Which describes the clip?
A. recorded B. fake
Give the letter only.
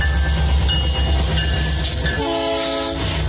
A